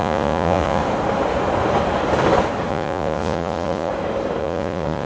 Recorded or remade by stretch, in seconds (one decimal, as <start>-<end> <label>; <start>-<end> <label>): 0.0-0.8 remade; 0.8-2.7 recorded; 2.7-3.9 remade; 3.9-4.4 recorded; 4.4-5.1 remade